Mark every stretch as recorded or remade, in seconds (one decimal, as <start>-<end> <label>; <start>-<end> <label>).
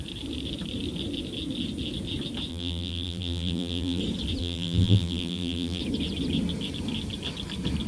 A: 0.0-2.5 recorded; 2.5-4.0 remade; 4.0-4.4 recorded; 4.4-5.8 remade; 5.8-7.9 recorded